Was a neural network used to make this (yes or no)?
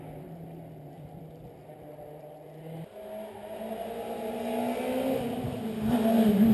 no